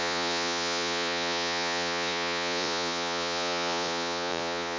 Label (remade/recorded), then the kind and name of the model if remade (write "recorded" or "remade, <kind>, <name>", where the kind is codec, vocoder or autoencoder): remade, vocoder, Vocos